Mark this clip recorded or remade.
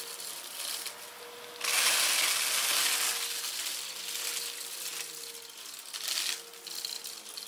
recorded